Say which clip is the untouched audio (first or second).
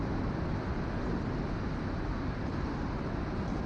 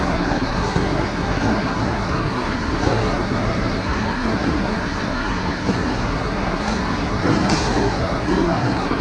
first